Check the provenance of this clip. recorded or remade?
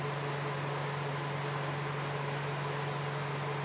recorded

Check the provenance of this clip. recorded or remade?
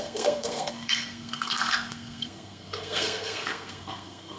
remade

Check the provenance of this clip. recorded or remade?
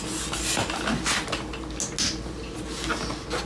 recorded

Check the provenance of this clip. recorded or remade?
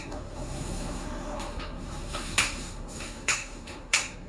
remade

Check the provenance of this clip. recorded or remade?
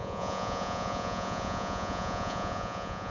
remade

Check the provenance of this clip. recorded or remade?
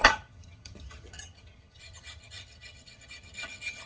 remade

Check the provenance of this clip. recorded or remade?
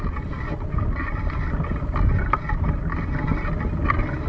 recorded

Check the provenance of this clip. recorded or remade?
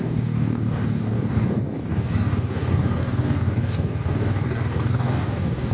remade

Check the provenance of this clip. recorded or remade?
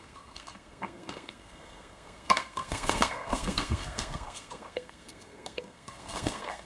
remade